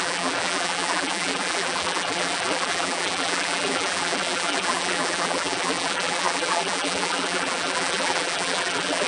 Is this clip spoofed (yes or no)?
yes